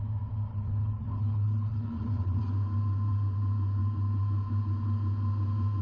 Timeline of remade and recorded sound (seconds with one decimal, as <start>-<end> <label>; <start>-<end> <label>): 0.0-0.5 recorded; 0.5-2.4 remade; 2.4-5.8 recorded